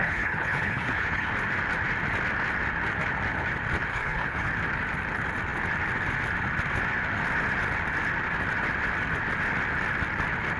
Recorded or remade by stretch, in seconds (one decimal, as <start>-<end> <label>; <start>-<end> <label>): 0.0-1.3 remade; 1.3-3.9 recorded; 3.9-4.5 remade; 4.5-10.6 recorded